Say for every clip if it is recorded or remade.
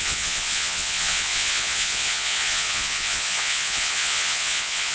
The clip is remade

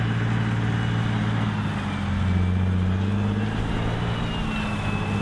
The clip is recorded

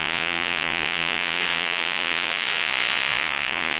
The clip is remade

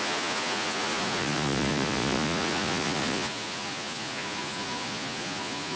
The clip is remade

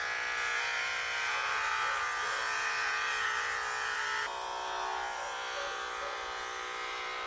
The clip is remade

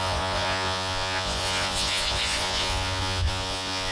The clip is remade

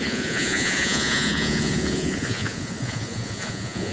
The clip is remade